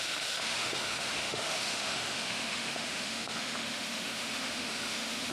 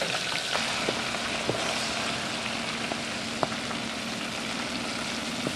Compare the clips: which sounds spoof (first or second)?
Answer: first